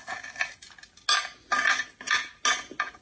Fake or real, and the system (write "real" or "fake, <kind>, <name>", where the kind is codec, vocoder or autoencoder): real